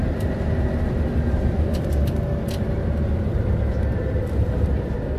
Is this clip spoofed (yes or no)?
yes